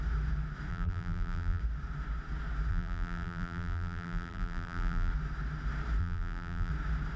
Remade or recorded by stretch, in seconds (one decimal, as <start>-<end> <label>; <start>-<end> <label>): 0.0-0.7 recorded; 0.7-1.6 remade; 1.6-2.7 recorded; 2.7-5.1 remade; 5.1-6.0 recorded; 6.0-6.7 remade; 6.7-7.2 recorded